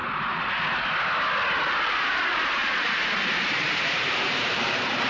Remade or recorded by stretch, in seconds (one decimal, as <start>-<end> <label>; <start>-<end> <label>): 0.0-1.9 recorded; 1.9-5.1 remade